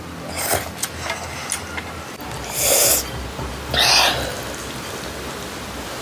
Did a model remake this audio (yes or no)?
no